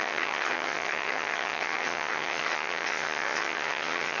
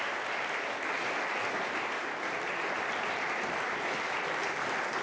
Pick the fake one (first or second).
first